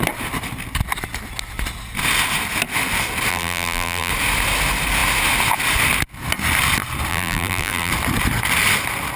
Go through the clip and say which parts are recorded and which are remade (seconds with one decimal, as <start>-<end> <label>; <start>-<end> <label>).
0.0-3.3 recorded; 3.3-4.1 remade; 4.1-7.1 recorded; 7.1-7.9 remade; 7.9-9.2 recorded